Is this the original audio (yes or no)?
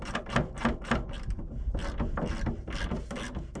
yes